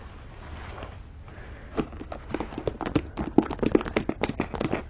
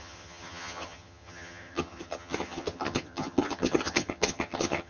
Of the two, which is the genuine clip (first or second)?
first